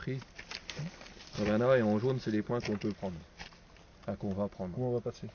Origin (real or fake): real